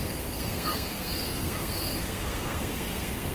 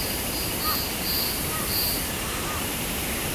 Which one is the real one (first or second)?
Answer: second